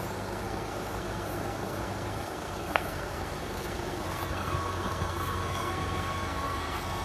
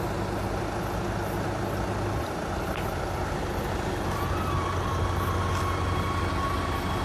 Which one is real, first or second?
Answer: second